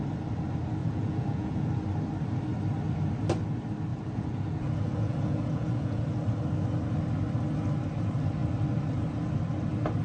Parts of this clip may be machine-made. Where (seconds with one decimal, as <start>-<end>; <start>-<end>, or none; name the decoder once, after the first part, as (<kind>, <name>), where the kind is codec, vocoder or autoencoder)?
0.8-1.7 (vocoder, Vocos); 3.9-6.0

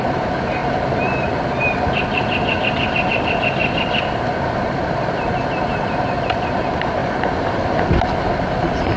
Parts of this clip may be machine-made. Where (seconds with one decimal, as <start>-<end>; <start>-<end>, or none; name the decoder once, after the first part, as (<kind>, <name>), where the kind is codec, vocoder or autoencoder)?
none

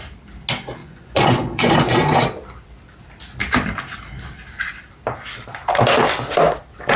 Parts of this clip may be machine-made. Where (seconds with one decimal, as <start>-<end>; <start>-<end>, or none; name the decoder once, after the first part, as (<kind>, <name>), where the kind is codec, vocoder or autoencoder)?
0.8-2.2 (vocoder, Vocos)

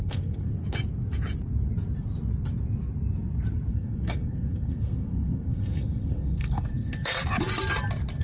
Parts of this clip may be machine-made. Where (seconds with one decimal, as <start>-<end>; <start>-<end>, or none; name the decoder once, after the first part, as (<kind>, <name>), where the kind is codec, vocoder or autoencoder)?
0.0-0.5 (codec, SNAC); 3.7-7.1

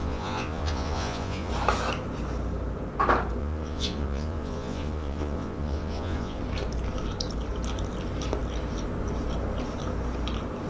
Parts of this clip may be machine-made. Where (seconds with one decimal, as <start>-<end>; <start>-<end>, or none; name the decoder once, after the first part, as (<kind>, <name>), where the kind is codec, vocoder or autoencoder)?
0.0-1.5 (vocoder, Vocos); 3.4-6.4